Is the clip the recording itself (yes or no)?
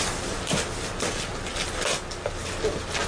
yes